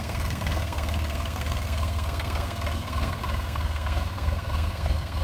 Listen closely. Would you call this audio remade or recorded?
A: remade